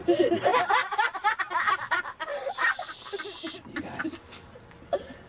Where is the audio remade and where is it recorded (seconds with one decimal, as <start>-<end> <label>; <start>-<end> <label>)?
0.0-0.5 recorded; 0.5-1.6 remade; 1.6-2.3 recorded; 2.3-4.0 remade; 4.0-5.3 recorded